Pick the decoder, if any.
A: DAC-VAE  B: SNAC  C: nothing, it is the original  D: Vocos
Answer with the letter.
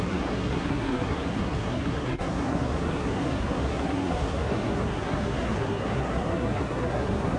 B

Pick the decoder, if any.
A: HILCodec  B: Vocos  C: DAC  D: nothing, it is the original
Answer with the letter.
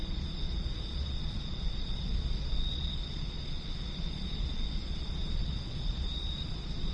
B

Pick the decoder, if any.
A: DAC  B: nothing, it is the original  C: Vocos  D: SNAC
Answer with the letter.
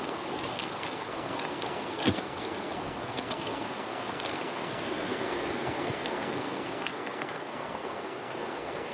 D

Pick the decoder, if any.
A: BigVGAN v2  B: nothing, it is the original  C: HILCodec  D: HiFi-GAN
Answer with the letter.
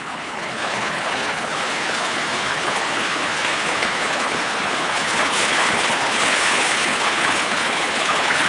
C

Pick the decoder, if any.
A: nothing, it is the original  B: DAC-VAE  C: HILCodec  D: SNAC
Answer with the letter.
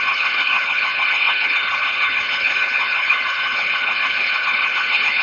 C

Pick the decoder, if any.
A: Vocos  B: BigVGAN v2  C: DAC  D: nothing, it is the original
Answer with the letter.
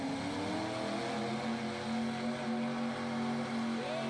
D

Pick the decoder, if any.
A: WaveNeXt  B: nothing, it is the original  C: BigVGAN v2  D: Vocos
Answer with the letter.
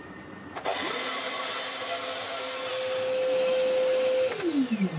B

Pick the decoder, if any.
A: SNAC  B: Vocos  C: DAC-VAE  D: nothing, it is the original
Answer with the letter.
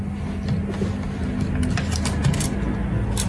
D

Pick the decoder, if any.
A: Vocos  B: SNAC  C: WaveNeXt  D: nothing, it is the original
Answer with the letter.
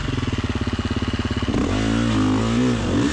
D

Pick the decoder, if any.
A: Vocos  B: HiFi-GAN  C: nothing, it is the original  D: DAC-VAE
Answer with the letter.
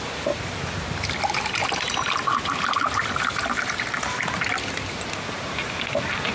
C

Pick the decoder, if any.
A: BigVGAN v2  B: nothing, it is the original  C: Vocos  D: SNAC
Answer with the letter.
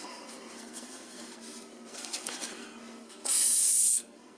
D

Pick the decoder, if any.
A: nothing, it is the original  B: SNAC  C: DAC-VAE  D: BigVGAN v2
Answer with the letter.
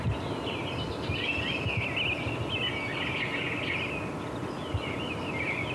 A